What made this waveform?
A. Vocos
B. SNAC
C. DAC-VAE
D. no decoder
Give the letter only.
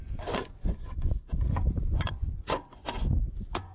A